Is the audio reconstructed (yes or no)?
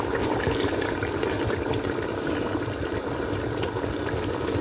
no